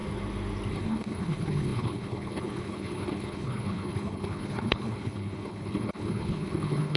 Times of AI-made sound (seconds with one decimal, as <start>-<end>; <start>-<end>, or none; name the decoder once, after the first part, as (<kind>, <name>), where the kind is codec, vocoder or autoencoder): 0.7-7.0 (codec, HILCodec)